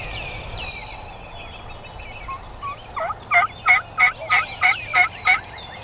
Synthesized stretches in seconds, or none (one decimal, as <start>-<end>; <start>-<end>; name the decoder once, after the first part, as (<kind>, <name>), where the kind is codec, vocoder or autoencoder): 0.0-0.8 (vocoder, BigVGAN v2); 4.3-5.8